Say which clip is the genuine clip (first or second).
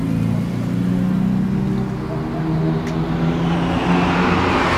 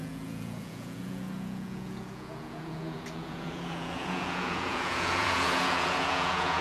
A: first